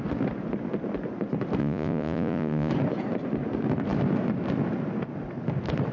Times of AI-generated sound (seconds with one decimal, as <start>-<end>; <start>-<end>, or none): 1.6-2.7